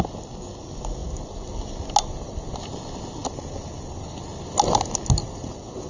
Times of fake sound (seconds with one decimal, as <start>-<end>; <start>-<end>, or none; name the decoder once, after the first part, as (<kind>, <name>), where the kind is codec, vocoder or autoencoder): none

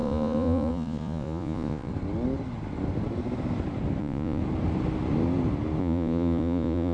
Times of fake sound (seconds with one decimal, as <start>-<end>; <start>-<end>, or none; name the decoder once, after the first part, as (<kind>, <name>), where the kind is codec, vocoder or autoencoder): 0.0-1.9 (vocoder, Vocos); 4.0-4.4; 5.8-6.9

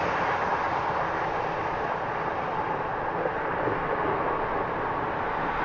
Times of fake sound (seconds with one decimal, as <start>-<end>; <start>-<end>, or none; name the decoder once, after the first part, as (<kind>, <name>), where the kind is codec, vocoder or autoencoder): none